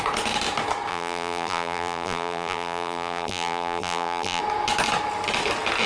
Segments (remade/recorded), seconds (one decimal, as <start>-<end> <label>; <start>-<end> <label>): 0.0-0.9 recorded; 0.9-4.4 remade; 4.4-5.9 recorded

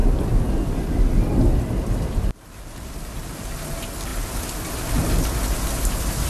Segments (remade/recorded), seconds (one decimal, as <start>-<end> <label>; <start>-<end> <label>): 0.0-2.3 remade; 2.3-6.3 recorded

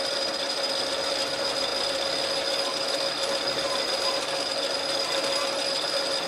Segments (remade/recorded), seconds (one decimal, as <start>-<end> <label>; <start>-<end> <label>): 0.0-6.3 recorded